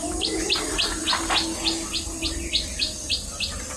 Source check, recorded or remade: recorded